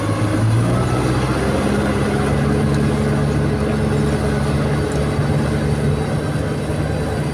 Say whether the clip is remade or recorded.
recorded